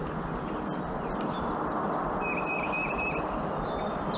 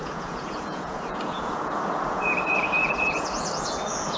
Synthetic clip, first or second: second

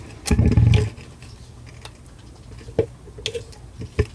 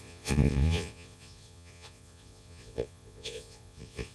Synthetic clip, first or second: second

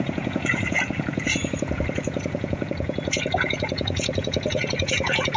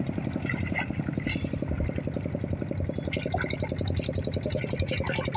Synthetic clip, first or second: first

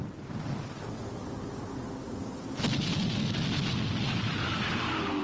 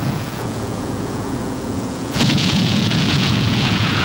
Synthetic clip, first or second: second